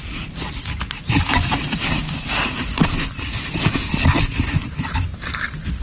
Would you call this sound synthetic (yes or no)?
no